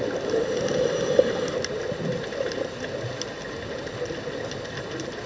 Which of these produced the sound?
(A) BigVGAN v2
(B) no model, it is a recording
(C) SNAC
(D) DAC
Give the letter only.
B